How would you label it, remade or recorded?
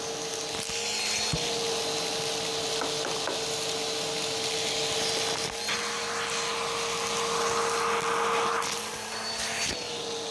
recorded